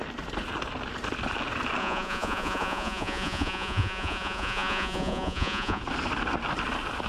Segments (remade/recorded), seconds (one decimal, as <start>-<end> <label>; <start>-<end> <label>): 0.0-1.8 recorded; 1.8-5.8 remade; 5.8-7.1 recorded